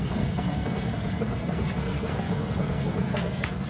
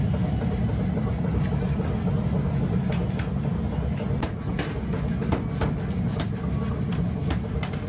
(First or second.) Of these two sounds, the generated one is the first